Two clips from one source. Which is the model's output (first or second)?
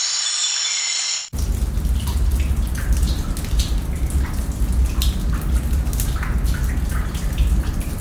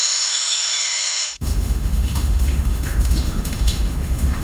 second